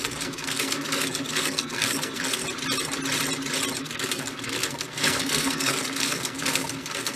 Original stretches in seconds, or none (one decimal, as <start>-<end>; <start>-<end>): 2.4-3.8